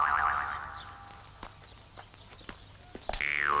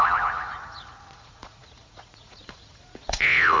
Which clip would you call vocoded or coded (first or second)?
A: second